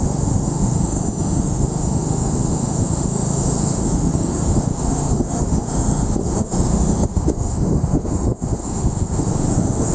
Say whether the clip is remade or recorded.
remade